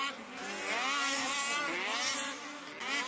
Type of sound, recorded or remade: recorded